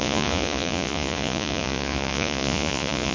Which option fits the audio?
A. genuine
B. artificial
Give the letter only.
B